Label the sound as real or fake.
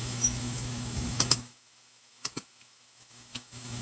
fake